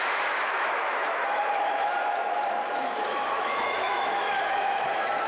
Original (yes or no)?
no